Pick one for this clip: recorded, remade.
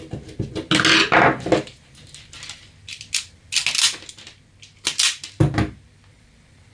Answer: recorded